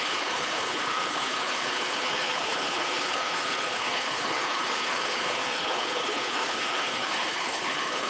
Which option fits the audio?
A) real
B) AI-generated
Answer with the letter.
B